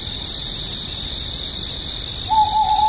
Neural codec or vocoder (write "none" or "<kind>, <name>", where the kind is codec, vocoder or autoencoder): none